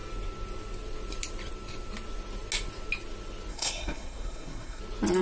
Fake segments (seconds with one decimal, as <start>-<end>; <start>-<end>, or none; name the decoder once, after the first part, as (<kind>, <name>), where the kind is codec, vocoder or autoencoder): 3.5-4.8 (codec, SNAC)